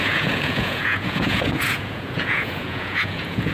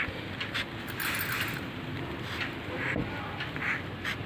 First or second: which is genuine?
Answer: second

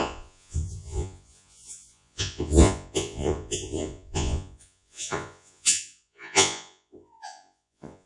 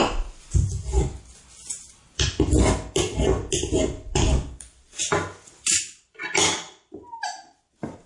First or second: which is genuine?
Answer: second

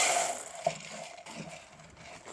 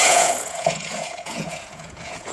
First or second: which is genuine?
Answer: first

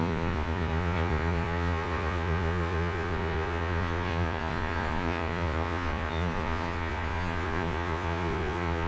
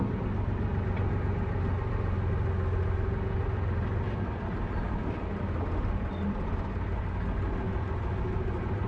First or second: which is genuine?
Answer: second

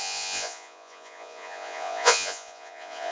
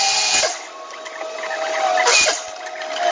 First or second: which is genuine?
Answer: second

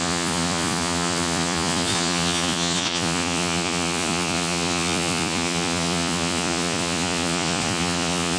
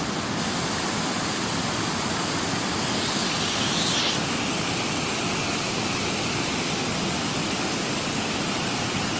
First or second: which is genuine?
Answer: second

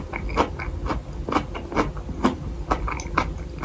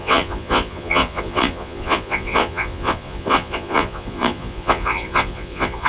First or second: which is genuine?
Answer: first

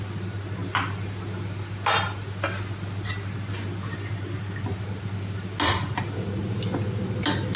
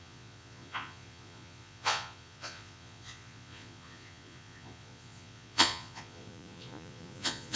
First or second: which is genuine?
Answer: first